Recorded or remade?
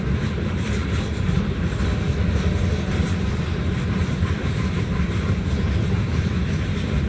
remade